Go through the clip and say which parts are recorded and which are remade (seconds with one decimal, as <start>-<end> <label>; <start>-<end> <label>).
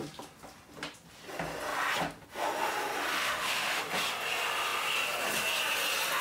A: 0.0-3.1 recorded; 3.1-3.8 remade; 3.8-6.2 recorded